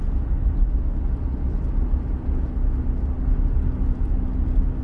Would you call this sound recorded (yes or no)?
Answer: yes